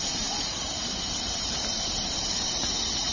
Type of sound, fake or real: fake